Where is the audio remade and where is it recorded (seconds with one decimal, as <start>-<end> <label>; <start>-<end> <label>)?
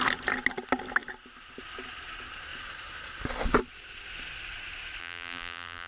0.0-5.0 recorded; 5.0-5.9 remade